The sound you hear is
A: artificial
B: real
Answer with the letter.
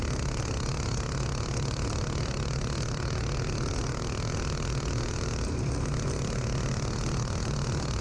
B